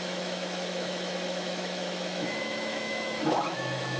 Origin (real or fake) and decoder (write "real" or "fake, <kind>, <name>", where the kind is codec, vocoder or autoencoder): fake, autoencoder, DAC-VAE